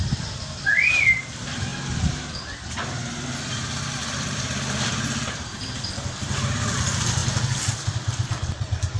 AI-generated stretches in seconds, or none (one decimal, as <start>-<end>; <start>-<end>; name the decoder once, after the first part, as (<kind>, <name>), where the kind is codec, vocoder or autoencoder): 0.0-1.7 (vocoder, BigVGAN v2); 5.9-9.0